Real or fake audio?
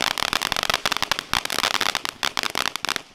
real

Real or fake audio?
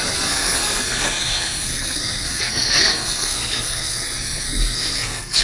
fake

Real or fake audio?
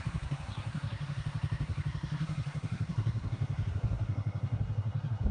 fake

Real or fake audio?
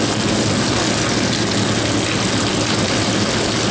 real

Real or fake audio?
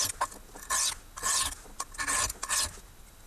real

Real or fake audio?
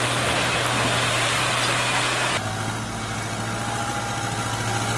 real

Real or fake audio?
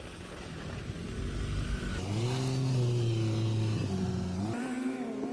real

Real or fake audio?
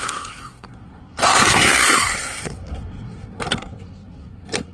fake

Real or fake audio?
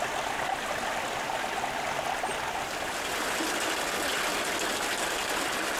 real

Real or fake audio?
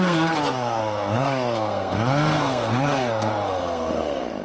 fake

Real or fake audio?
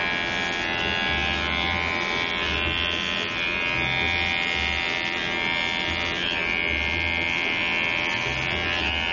real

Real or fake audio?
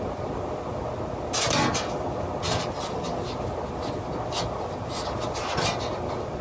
real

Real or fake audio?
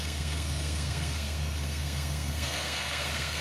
fake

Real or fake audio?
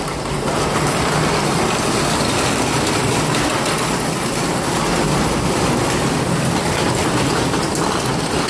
real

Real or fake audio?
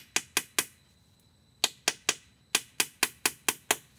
real